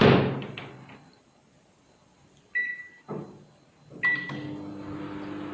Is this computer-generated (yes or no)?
no